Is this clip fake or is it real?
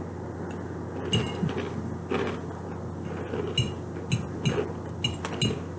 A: real